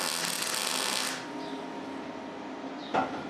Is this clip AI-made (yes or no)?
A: no